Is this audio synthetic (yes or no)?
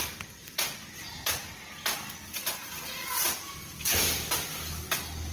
no